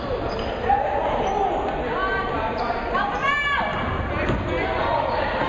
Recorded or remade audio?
recorded